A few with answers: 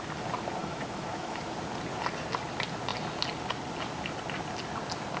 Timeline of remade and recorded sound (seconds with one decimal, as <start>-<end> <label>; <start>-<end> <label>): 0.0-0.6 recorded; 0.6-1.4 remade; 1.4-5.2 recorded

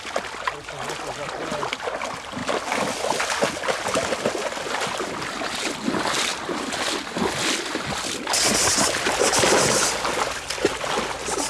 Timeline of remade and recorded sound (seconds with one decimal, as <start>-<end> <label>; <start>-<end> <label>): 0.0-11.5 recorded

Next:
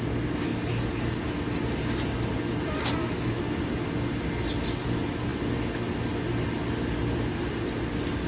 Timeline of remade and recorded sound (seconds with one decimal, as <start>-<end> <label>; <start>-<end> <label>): 0.0-3.0 recorded; 3.0-3.6 remade; 3.6-8.3 recorded